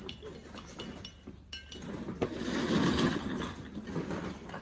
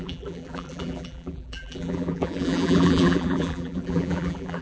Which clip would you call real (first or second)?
first